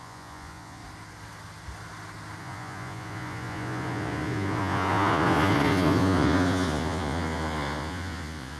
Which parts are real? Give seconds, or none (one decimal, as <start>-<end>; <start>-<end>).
0.8-2.4